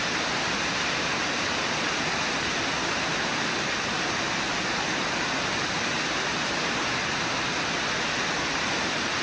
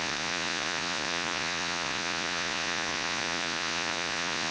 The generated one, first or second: second